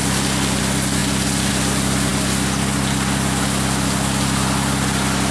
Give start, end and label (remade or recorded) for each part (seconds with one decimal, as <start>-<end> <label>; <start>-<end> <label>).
0.0-5.3 recorded